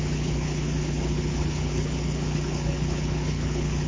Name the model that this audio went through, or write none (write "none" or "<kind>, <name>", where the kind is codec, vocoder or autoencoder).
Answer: codec, HILCodec